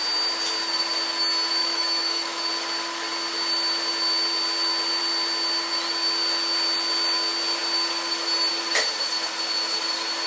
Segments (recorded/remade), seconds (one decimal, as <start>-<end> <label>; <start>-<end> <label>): 0.0-1.6 recorded; 1.6-2.5 remade; 2.5-10.3 recorded